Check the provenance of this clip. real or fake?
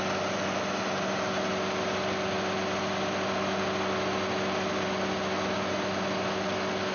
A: real